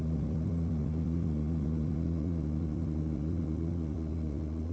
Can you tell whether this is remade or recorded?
remade